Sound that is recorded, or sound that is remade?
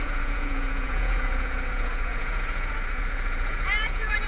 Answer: remade